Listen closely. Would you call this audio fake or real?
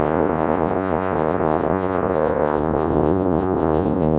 fake